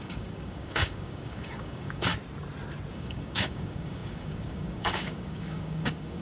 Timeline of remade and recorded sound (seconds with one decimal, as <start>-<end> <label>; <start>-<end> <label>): 0.0-2.1 remade; 2.1-2.9 recorded; 2.9-6.2 remade